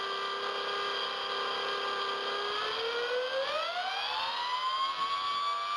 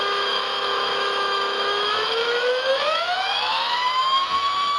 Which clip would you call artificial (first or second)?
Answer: second